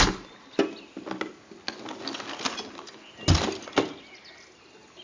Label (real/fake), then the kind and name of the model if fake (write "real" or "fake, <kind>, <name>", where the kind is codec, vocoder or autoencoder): real